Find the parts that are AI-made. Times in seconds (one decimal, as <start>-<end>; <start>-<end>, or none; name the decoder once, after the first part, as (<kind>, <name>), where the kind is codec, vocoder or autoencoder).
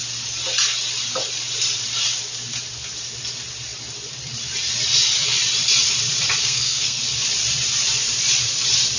6.4-7.0 (codec, SNAC)